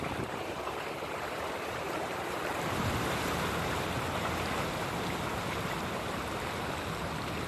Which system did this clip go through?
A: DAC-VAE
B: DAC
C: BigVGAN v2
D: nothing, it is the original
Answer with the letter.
C